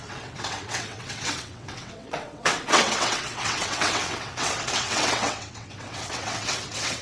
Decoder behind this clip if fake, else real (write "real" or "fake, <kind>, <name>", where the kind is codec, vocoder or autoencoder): fake, vocoder, WaveNeXt